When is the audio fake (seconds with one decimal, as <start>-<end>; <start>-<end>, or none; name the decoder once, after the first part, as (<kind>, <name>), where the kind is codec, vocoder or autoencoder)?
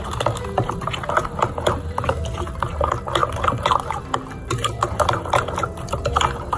none